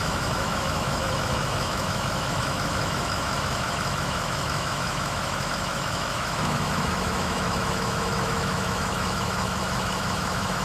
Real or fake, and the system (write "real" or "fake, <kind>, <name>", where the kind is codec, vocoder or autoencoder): fake, autoencoder, DAC-VAE